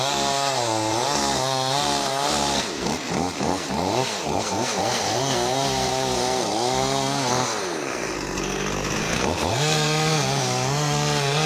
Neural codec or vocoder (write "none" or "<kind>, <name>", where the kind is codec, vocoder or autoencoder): codec, SNAC